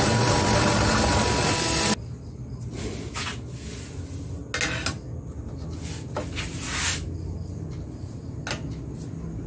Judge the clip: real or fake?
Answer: real